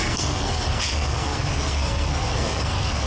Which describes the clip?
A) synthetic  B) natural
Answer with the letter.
A